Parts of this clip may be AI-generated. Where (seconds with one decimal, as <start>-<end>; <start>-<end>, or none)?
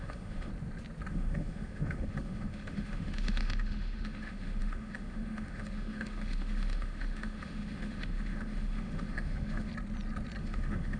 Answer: 0.0-0.5; 1.1-9.7; 10.4-11.0